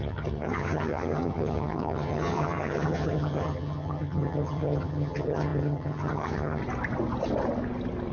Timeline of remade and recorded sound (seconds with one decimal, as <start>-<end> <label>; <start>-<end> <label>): 0.0-6.6 remade; 6.6-8.1 recorded